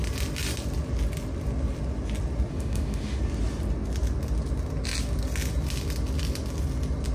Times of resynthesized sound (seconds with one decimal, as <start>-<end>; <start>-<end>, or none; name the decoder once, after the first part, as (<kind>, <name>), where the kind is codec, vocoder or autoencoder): 2.5-3.2 (autoencoder, DAC-VAE)